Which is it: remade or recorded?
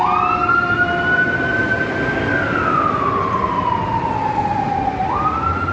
recorded